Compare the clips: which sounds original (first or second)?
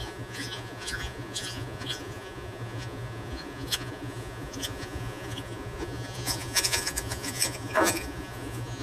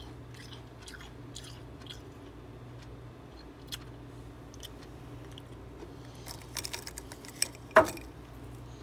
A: second